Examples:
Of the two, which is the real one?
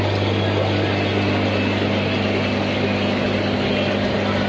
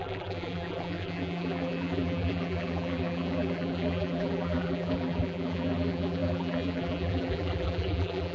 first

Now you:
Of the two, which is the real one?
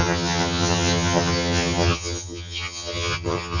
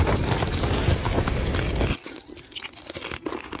second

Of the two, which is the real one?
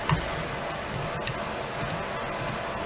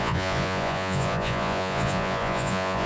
first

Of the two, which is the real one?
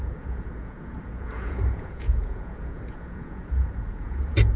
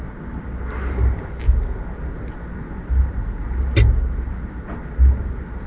second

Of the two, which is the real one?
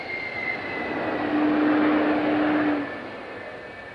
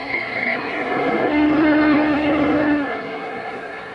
first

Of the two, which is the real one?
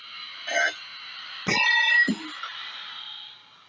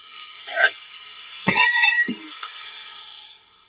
first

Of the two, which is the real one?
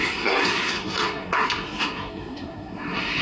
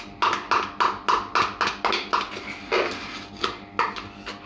second